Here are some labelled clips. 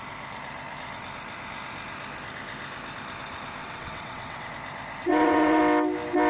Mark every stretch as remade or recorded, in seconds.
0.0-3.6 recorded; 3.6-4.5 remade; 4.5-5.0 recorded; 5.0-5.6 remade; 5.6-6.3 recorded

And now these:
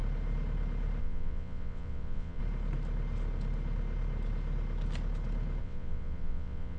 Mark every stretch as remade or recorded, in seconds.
0.0-1.0 recorded; 1.0-2.4 remade; 2.4-5.6 recorded; 5.6-6.8 remade

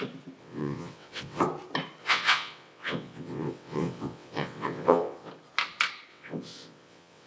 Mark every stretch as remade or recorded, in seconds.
0.0-0.4 recorded; 0.4-1.4 remade; 1.4-2.0 recorded; 2.0-5.3 remade; 5.3-6.1 recorded; 6.1-7.3 remade

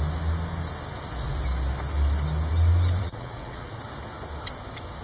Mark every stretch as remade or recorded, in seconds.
0.0-3.0 recorded; 3.0-3.7 remade; 3.7-5.0 recorded

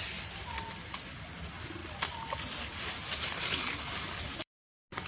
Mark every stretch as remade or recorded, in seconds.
0.0-5.1 recorded

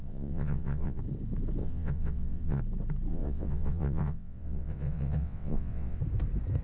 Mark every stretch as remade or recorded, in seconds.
0.0-1.0 remade; 1.0-1.6 recorded; 1.6-2.6 remade; 2.6-3.1 recorded; 3.1-6.0 remade; 6.0-6.6 recorded